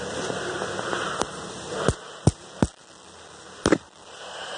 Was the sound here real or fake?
real